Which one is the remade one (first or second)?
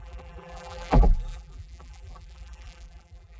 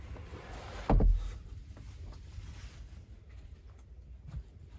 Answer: first